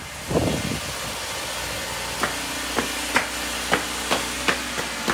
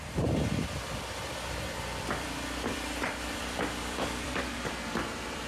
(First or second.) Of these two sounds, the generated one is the second